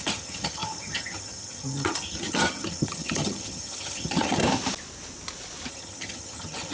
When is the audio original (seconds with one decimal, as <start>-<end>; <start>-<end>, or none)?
4.4-5.7